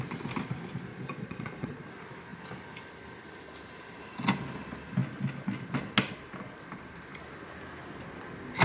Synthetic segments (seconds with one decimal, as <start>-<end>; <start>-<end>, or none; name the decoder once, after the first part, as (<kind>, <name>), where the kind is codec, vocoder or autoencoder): 0.9-1.9 (vocoder, Vocos)